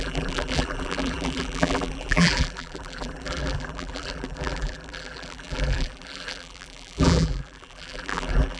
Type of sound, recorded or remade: remade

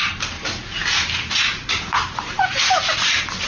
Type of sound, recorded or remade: remade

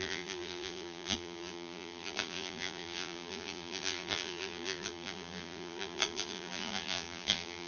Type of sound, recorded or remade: remade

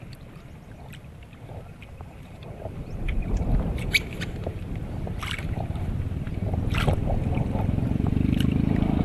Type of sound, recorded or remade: remade